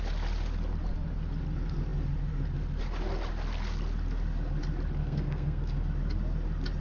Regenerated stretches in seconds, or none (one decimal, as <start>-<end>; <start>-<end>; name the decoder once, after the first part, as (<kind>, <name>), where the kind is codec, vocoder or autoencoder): 5.0-5.8 (codec, SNAC)